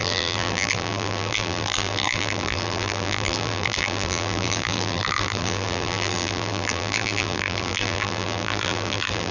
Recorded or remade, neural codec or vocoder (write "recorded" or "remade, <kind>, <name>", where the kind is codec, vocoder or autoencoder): remade, vocoder, BigVGAN v2